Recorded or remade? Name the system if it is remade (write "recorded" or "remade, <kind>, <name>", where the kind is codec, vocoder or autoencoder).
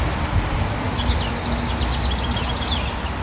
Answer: recorded